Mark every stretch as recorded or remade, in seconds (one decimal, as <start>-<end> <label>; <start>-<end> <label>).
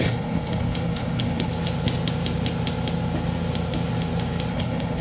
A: 0.0-1.5 remade; 1.5-4.5 recorded; 4.5-5.0 remade